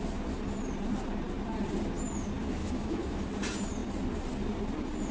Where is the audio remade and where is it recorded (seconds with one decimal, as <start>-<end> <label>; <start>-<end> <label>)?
0.0-2.6 recorded; 2.6-3.2 remade; 3.2-5.1 recorded